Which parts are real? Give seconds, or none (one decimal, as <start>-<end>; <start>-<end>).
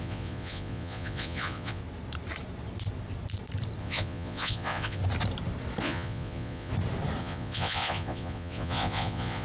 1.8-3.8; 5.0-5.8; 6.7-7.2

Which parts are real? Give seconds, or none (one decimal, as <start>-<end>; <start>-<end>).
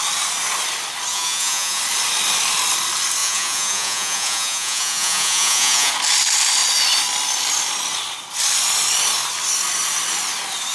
0.0-1.1; 1.8-3.2; 5.9-10.7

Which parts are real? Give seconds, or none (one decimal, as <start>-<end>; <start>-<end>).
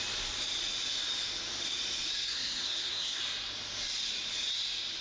0.0-2.2; 3.2-5.0